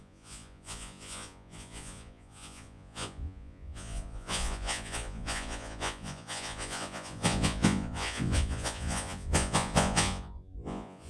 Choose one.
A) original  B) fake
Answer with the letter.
B